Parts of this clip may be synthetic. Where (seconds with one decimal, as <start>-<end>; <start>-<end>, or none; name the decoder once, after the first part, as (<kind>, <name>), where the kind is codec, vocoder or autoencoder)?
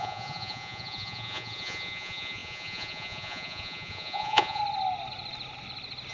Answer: 0.0-4.6 (vocoder, Vocos)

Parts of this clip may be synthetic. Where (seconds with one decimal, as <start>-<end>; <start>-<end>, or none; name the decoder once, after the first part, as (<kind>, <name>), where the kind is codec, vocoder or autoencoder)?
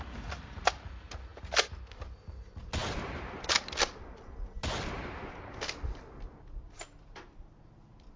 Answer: none